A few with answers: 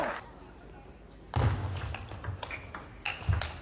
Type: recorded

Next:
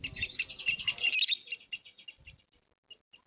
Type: recorded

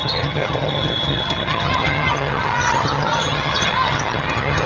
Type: remade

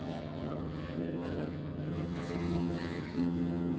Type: remade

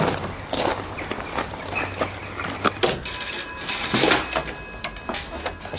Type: recorded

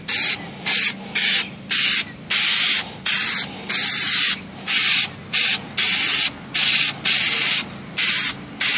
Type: recorded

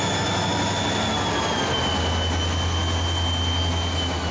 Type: recorded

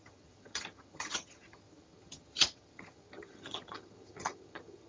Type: remade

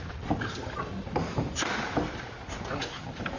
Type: recorded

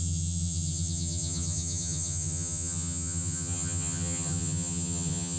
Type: remade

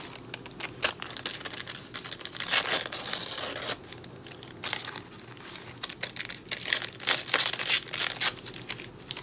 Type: recorded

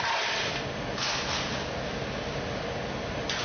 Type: recorded